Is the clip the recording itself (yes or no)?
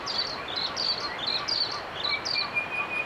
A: yes